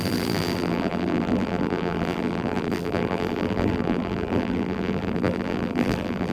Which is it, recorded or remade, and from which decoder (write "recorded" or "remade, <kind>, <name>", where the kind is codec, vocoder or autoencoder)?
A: remade, vocoder, BigVGAN v2